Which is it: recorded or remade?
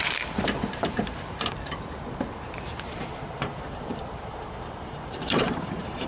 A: remade